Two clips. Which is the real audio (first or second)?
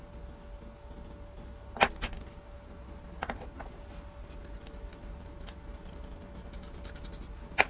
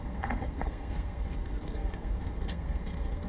first